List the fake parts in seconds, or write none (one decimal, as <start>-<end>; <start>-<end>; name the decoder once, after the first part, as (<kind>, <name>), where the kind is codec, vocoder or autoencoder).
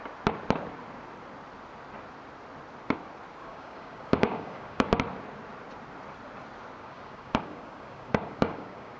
3.4-5.0 (codec, DAC); 6.8-9.0